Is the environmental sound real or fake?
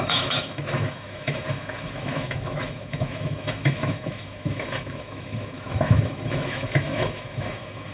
fake